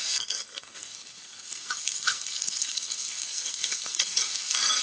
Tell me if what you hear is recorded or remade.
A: remade